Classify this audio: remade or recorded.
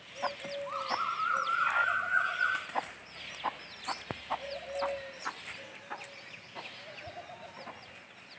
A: recorded